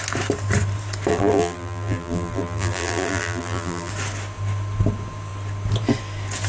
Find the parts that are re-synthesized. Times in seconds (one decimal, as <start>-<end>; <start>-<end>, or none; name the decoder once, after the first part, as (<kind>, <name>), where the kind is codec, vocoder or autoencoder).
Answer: 1.1-3.9 (vocoder, BigVGAN v2)

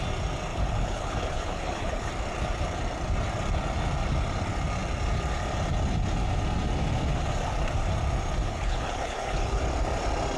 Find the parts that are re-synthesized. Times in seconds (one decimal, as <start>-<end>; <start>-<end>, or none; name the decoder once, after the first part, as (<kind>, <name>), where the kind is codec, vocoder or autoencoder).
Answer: 0.5-2.1 (codec, HILCodec); 8.4-9.6

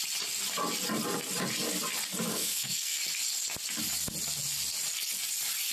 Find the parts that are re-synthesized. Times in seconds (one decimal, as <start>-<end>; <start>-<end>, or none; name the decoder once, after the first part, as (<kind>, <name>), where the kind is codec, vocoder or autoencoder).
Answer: 2.3-3.0 (codec, SNAC)

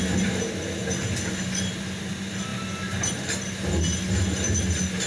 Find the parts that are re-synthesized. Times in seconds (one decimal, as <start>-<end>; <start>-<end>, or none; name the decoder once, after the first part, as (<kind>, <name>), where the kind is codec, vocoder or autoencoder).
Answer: none

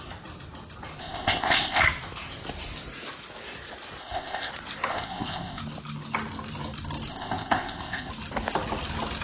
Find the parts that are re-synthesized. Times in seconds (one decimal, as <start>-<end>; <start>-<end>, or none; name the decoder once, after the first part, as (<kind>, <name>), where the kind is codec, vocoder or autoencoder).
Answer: 1.0-1.8 (codec, ZipCodec); 4.0-4.5; 4.9-5.6; 7.1-8.1

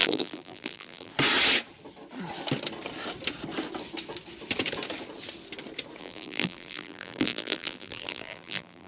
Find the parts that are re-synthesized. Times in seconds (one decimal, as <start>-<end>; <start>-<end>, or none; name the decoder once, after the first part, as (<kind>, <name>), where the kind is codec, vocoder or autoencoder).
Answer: 0.0-1.1 (vocoder, BigVGAN v2); 6.0-8.9